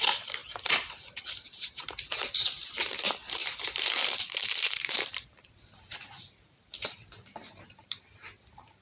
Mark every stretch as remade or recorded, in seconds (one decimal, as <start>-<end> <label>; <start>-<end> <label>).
0.0-8.8 remade